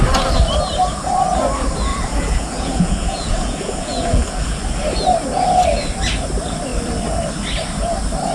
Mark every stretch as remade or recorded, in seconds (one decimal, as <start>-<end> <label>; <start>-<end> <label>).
0.0-1.9 recorded; 1.9-4.6 remade; 4.6-8.3 recorded